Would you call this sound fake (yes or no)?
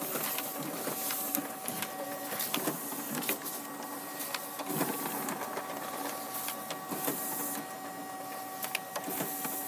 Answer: no